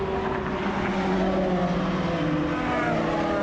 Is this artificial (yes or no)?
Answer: no